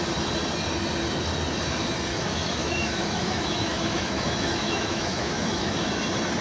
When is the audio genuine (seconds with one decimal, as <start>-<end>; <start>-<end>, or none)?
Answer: 0.0-2.1; 5.9-6.4